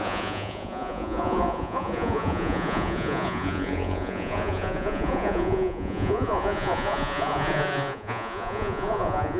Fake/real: fake